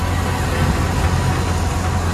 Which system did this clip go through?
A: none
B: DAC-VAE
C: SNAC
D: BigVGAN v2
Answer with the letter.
A